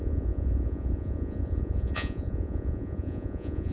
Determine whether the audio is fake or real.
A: fake